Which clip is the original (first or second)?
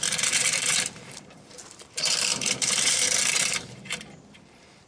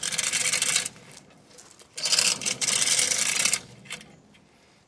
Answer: second